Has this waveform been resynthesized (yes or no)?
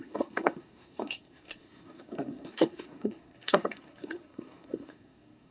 yes